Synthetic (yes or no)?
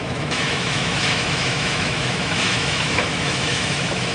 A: yes